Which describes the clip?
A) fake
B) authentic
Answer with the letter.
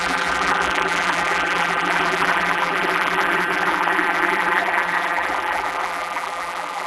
A